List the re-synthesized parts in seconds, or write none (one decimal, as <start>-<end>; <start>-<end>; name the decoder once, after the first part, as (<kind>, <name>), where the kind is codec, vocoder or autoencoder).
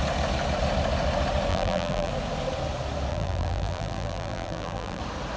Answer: 1.5-2.1 (vocoder, BigVGAN v2); 3.1-5.0